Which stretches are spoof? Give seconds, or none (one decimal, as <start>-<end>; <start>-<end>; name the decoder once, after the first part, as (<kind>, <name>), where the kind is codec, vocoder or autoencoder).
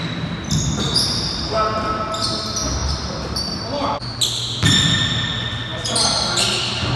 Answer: 2.8-3.4 (vocoder, BigVGAN v2)